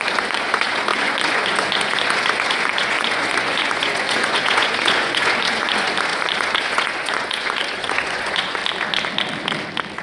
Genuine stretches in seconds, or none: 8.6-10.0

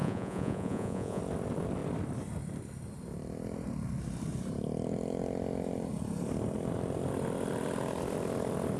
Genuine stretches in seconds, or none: 1.2-8.8

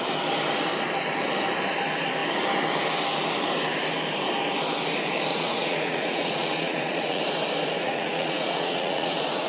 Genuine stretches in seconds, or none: 0.0-5.3; 7.2-7.8

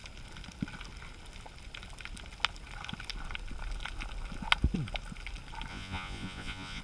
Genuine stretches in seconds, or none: 0.0-5.7

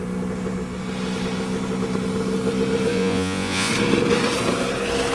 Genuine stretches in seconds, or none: 0.0-2.9; 3.7-5.1

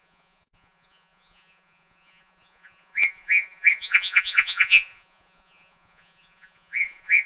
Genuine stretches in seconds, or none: none

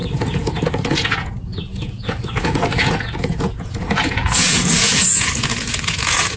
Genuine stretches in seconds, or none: none

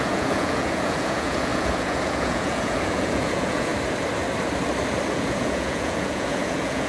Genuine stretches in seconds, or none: 3.7-5.1